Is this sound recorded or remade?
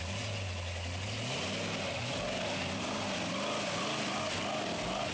recorded